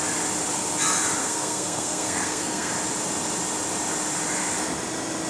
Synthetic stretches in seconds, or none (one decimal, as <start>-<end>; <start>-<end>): 1.2-2.7